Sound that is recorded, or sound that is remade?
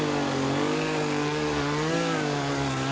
remade